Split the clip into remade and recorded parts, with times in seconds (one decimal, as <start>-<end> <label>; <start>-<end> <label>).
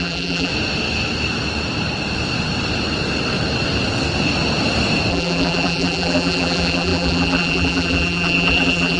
0.0-0.5 remade; 0.5-5.1 recorded; 5.1-9.0 remade